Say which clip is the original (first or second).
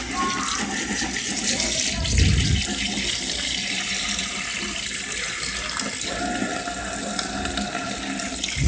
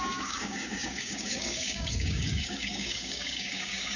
first